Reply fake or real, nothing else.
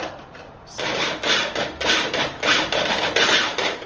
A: real